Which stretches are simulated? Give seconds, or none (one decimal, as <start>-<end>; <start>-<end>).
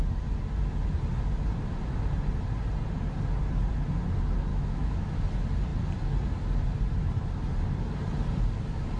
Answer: 4.5-5.2